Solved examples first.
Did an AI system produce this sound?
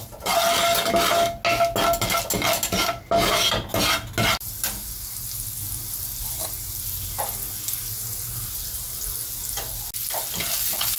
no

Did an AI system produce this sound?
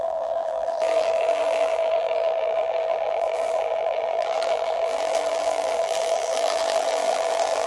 yes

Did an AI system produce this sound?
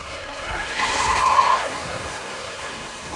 yes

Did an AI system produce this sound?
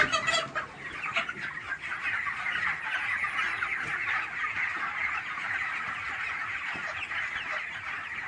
no